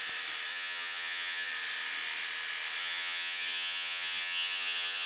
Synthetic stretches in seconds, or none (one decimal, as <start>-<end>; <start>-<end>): 0.5-1.5; 2.8-5.1

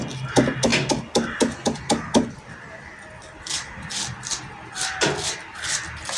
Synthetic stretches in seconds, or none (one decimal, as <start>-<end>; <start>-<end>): none

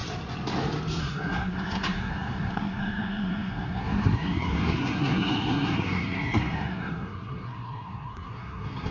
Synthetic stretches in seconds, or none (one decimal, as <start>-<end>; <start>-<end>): 1.0-8.9

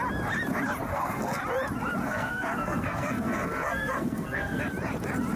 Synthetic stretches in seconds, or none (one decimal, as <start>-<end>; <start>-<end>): 0.9-1.4; 2.0-4.6